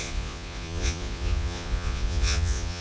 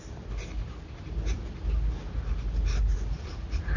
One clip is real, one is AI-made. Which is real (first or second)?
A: second